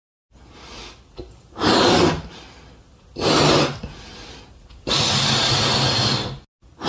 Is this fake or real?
real